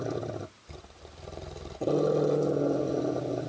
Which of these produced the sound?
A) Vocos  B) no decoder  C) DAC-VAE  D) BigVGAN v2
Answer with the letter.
B